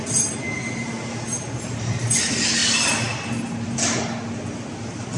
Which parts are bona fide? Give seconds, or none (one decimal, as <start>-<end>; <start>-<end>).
0.0-5.2